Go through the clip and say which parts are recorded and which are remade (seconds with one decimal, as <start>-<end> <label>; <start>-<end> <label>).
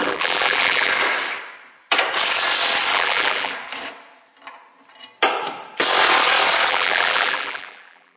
0.0-0.9 remade; 0.9-2.9 recorded; 2.9-3.5 remade; 3.5-6.7 recorded; 6.7-8.2 remade